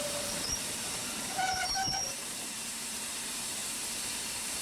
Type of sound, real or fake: fake